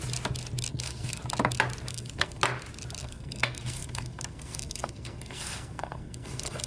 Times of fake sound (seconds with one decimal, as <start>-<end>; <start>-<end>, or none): 0.7-1.2; 1.9-2.4; 3.0-6.7